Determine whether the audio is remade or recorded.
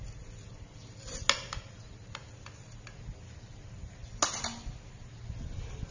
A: recorded